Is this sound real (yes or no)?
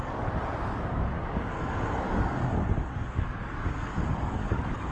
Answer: no